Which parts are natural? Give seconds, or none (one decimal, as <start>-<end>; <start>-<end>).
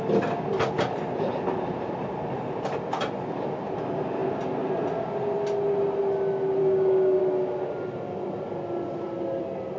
0.0-6.6; 7.2-9.8